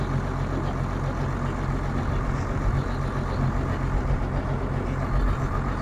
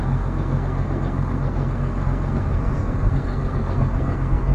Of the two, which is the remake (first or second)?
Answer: second